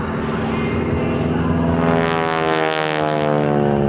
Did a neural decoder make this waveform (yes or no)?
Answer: no